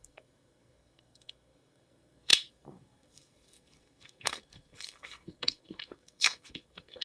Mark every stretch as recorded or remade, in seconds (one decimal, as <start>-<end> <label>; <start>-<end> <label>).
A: 0.0-7.0 remade